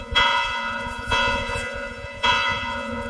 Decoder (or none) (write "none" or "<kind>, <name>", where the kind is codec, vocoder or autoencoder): vocoder, Vocos